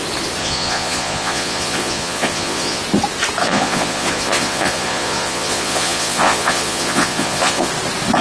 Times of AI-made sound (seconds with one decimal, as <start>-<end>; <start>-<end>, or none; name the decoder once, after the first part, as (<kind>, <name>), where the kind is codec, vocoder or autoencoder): 0.4-2.8 (vocoder, Vocos); 3.4-7.7